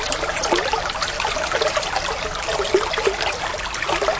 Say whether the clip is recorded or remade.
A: recorded